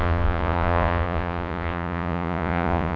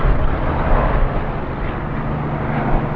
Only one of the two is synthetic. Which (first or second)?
first